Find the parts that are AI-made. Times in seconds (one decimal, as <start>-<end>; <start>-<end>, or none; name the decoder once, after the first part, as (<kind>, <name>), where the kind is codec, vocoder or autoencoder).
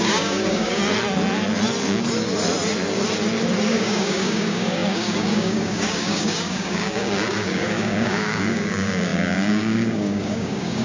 0.0-0.8 (codec, DAC); 3.7-10.8